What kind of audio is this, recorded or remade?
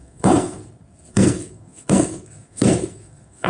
remade